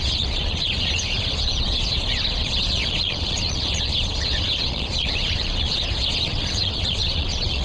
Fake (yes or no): yes